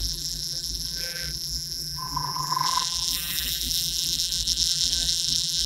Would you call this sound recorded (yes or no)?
no